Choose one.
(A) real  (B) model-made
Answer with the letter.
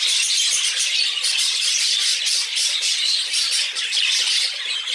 A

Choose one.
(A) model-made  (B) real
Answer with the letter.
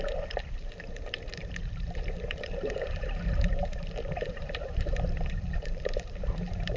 A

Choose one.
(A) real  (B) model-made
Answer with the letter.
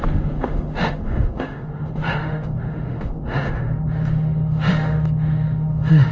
B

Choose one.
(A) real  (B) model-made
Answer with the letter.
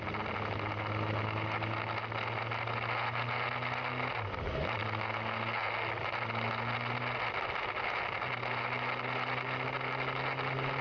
A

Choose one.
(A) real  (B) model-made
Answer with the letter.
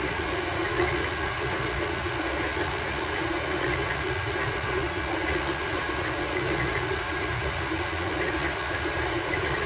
B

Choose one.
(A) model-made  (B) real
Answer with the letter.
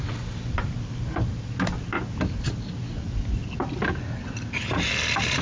B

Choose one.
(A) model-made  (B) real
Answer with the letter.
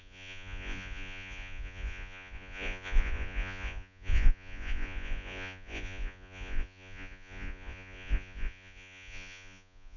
A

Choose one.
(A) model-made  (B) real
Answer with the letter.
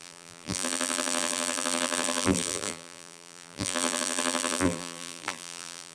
A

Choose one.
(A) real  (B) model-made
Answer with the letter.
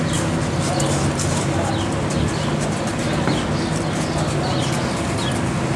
A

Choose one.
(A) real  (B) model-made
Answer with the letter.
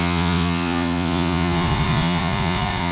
B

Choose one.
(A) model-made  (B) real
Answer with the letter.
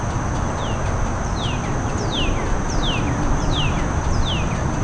B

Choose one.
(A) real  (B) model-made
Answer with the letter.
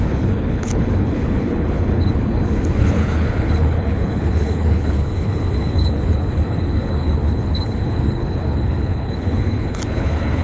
B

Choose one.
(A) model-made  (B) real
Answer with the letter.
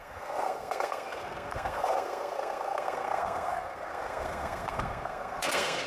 A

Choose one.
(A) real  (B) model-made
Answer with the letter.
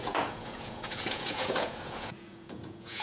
B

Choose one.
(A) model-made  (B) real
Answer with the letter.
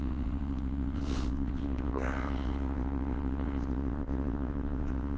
A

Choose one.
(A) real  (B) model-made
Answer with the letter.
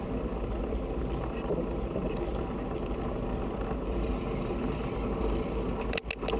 A